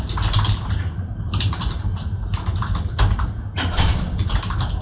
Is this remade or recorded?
recorded